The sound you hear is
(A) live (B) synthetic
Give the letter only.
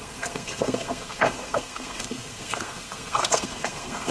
B